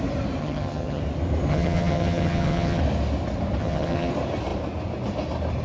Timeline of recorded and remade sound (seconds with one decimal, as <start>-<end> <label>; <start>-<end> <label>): 0.0-0.4 recorded; 0.4-1.0 remade; 1.0-1.5 recorded; 1.5-2.8 remade; 2.8-3.6 recorded; 3.6-4.1 remade; 4.1-5.6 recorded